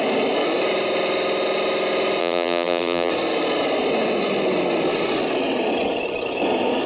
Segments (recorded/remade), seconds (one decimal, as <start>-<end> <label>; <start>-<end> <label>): 0.0-2.2 recorded; 2.2-3.1 remade; 3.1-6.9 recorded